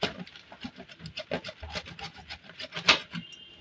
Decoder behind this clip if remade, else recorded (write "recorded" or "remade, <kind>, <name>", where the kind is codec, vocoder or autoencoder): recorded